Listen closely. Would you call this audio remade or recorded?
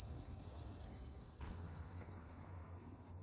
remade